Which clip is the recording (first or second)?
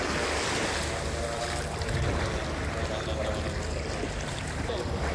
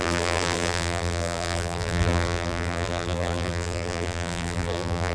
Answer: first